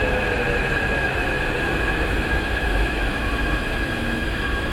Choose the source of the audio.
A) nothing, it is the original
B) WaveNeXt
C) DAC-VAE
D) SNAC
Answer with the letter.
C